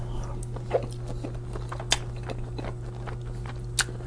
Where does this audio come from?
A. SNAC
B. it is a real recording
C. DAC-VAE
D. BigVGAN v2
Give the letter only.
B